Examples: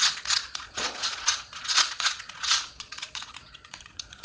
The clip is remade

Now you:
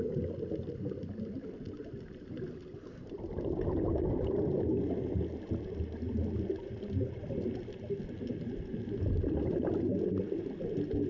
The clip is recorded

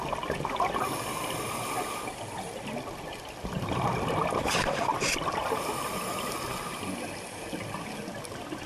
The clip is recorded